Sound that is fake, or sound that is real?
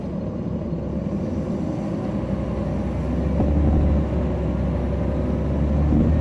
real